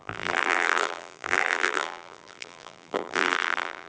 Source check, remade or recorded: remade